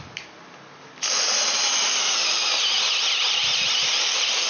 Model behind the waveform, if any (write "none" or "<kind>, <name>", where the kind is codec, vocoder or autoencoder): none